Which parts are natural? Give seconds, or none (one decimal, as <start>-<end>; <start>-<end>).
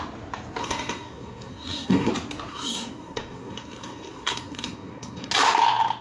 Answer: 0.0-0.6; 2.1-2.5; 5.3-6.0